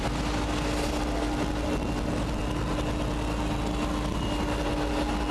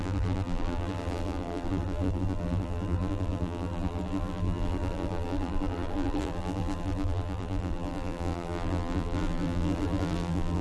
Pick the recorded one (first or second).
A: first